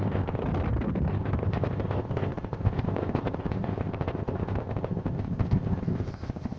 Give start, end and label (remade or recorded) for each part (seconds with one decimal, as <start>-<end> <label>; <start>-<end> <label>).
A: 0.0-0.4 remade; 0.4-1.1 recorded; 1.1-6.6 remade